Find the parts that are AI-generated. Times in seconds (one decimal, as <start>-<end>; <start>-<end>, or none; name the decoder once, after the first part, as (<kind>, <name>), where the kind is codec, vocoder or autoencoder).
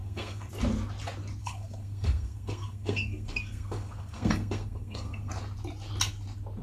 0.0-0.5 (codec, SNAC); 1.4-5.3